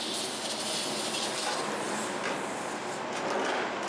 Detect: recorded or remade recorded